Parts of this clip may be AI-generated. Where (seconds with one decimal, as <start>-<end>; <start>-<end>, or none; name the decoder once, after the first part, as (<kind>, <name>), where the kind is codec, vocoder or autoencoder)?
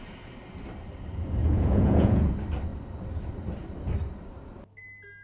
1.4-2.3 (vocoder, Vocos)